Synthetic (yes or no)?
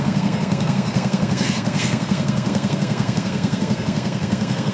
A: yes